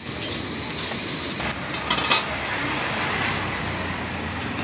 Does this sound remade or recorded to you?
recorded